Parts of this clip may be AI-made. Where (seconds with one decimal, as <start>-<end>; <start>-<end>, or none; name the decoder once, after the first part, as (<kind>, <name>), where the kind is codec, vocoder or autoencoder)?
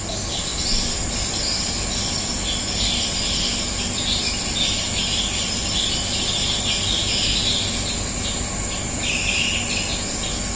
7.0-7.5 (autoencoder, DAC-VAE)